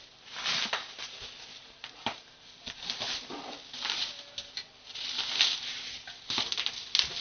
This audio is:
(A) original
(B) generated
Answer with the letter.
A